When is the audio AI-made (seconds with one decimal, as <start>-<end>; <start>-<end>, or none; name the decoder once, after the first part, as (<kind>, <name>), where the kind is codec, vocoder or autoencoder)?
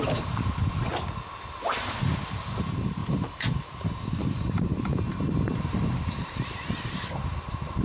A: 0.0-0.9 (vocoder, BigVGAN v2); 2.0-7.8